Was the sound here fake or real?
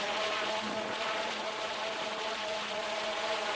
fake